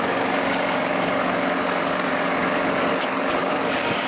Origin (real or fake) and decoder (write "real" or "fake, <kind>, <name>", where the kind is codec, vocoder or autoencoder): fake, codec, DAC